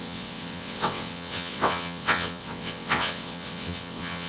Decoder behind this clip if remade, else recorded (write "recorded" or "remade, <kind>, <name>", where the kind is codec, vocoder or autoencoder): remade, vocoder, WaveNeXt